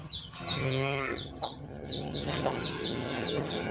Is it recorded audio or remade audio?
remade